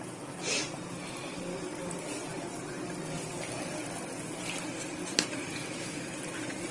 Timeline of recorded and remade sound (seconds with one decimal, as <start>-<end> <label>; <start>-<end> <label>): 0.0-5.6 recorded; 5.6-6.1 remade; 6.1-6.7 recorded